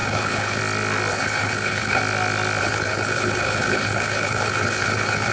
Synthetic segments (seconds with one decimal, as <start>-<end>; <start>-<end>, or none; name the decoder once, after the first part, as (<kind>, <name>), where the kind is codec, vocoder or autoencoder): 0.0-0.6 (codec, HILCodec); 1.1-2.0; 2.6-5.3